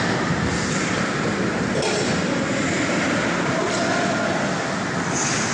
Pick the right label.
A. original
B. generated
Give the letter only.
A